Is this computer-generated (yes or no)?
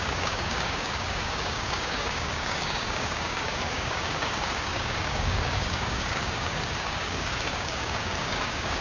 yes